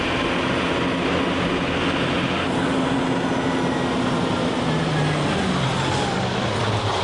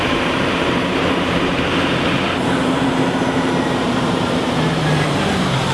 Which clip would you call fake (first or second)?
second